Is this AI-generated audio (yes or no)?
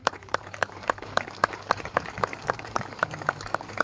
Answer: yes